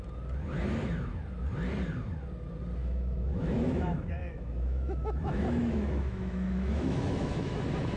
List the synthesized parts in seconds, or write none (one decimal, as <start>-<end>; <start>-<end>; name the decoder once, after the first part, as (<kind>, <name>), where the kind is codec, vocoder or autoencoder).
2.8-7.6 (autoencoder, DAC-VAE)